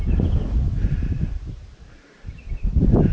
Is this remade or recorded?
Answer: recorded